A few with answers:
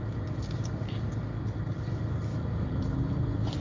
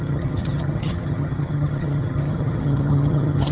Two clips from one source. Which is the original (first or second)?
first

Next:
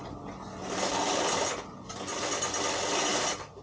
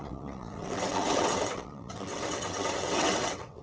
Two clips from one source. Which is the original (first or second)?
first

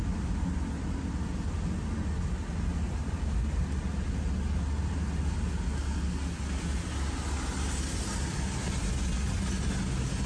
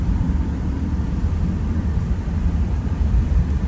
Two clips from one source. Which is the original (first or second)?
first